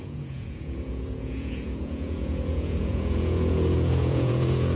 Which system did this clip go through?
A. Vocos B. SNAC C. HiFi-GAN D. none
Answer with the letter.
A